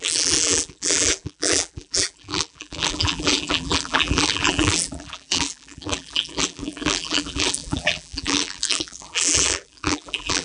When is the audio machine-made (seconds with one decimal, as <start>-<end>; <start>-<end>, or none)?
0.0-10.4